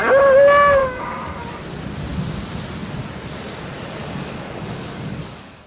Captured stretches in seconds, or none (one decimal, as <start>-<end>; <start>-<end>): 0.0-0.8; 1.4-4.0